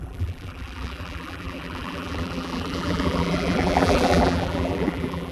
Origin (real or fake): fake